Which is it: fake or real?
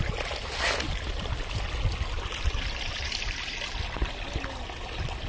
real